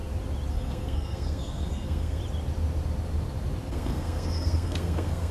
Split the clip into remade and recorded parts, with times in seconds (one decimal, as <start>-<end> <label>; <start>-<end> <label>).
0.0-0.5 recorded; 0.5-2.2 remade; 2.2-3.7 recorded; 3.7-5.3 remade